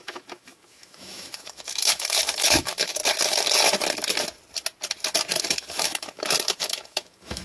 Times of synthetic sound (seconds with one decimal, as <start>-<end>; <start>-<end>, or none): 0.0-3.0; 5.4-7.4